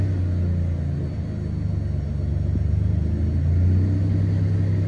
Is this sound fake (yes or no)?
no